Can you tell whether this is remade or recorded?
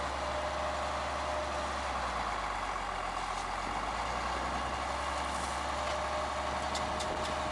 recorded